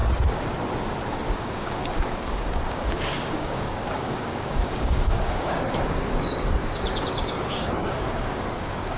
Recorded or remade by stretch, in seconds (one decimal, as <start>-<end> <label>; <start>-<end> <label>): 0.0-1.3 recorded; 1.3-9.0 remade